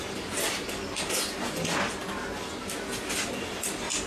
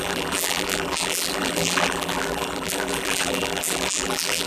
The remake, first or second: second